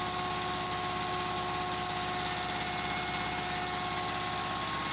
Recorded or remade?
recorded